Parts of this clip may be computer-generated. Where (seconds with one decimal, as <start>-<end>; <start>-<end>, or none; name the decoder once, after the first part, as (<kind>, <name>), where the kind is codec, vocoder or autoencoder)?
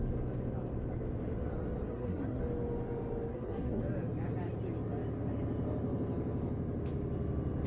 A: 1.9-2.4 (codec, SNAC); 3.3-3.8